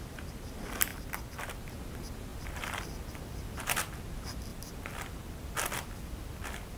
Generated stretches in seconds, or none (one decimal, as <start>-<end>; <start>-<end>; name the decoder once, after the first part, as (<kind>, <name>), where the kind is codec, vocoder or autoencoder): 0.9-1.6 (vocoder, BigVGAN v2); 2.3-3.6; 4.5-6.8